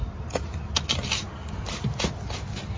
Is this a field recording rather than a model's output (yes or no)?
yes